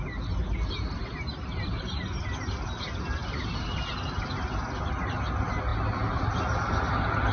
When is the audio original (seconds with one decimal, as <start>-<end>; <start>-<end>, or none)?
0.0-7.3